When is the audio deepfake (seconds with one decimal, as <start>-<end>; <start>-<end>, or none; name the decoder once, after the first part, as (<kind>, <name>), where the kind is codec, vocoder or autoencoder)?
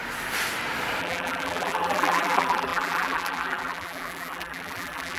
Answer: 1.0-5.2 (vocoder, BigVGAN v2)